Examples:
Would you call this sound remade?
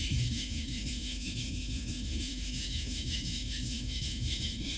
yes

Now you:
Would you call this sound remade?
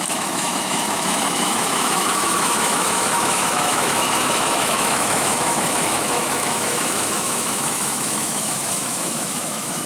yes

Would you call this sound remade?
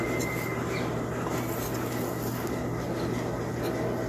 no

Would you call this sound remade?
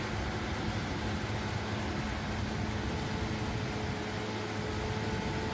no